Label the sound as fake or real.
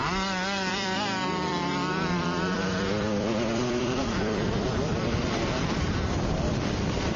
fake